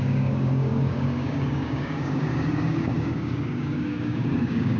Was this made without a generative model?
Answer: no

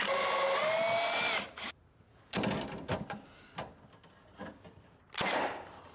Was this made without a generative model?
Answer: yes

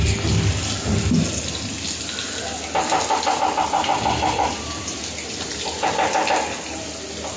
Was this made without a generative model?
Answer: yes